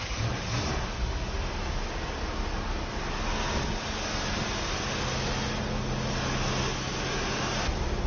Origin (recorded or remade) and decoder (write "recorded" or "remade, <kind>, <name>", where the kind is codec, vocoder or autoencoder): recorded